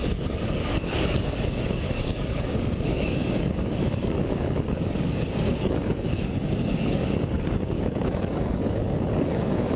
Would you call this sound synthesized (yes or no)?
yes